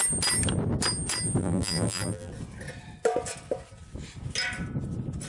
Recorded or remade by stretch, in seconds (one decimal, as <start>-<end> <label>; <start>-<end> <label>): 0.0-1.4 recorded; 1.4-2.3 remade; 2.3-5.3 recorded